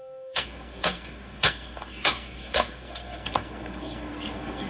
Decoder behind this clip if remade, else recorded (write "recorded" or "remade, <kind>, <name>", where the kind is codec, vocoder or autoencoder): remade, codec, SNAC